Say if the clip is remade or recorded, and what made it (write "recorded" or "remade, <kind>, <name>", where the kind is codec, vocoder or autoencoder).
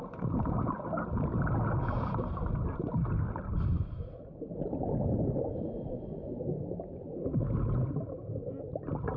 recorded